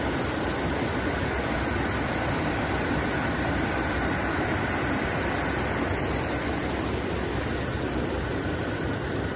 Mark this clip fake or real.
real